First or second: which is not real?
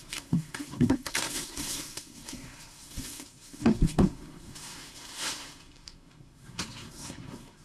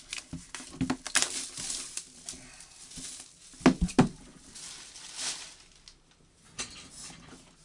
first